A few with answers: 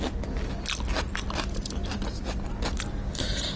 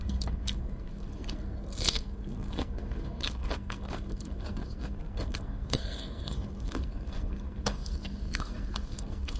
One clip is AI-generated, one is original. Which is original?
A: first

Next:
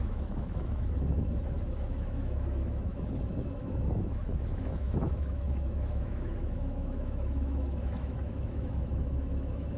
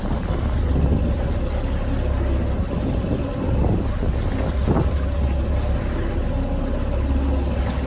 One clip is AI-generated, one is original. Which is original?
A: second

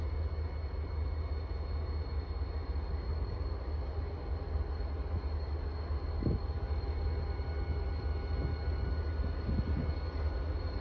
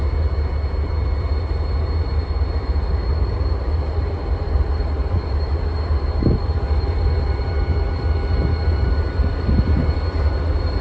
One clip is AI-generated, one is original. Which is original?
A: first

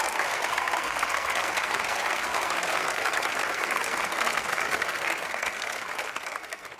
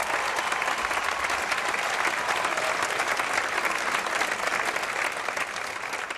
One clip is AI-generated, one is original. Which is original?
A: second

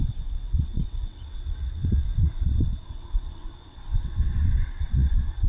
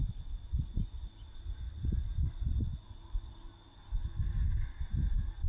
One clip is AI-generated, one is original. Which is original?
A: second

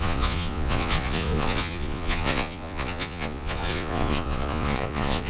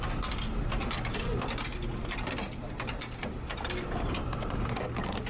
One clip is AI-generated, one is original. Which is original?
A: second